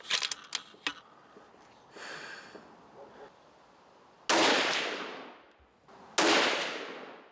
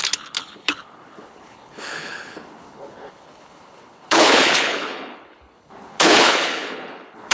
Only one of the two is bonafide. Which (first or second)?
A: first